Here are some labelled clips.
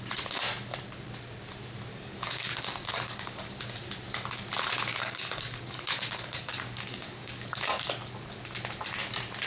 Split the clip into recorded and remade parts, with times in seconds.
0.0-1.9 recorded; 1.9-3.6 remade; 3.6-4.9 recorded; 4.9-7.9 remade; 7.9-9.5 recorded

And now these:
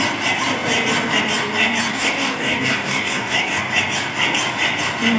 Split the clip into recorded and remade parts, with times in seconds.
0.0-1.9 recorded; 1.9-3.6 remade; 3.6-5.2 recorded

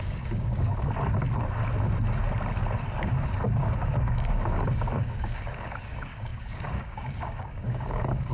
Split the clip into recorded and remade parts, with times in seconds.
0.0-0.7 remade; 0.7-3.6 recorded; 3.6-8.3 remade